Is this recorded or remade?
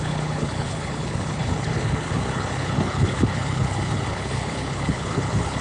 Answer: remade